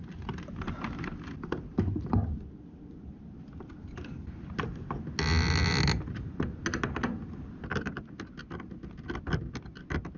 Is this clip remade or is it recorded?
recorded